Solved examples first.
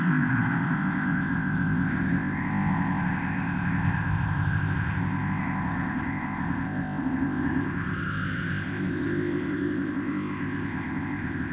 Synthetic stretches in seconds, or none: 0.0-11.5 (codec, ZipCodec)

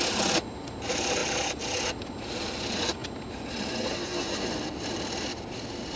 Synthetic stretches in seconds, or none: none

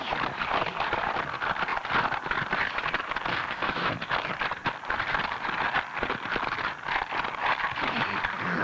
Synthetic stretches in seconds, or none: 3.3-3.9 (codec, SNAC)

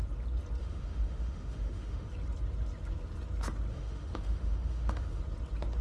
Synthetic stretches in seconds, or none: 0.6-2.1 (autoencoder, DAC-VAE); 3.7-5.2

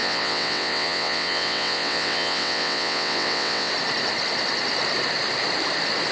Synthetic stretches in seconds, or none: 0.0-3.7 (vocoder, WaveNeXt)

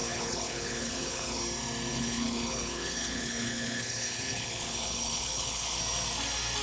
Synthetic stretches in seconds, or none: 0.0-1.4 (codec, HILCodec); 1.9-5.8

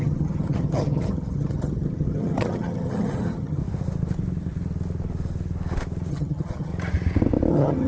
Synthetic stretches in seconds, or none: 0.0-3.6 (vocoder, HiFi-GAN); 6.1-6.7; 7.5-7.9